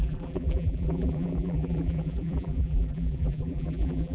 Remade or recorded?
remade